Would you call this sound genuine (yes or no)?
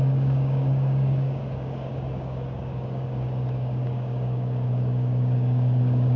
no